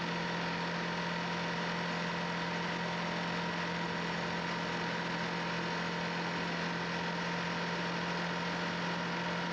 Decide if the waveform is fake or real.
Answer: real